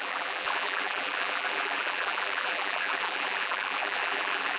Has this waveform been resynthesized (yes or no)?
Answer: yes